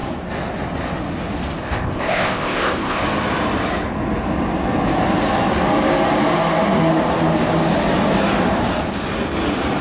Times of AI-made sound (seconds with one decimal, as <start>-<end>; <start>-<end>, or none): 1.6-3.0